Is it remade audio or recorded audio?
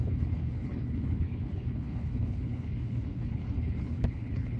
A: remade